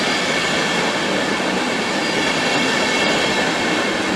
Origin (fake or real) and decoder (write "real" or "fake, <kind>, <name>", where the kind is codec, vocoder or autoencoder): real